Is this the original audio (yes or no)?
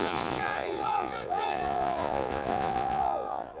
no